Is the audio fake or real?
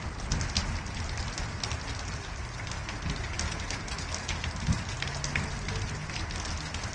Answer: real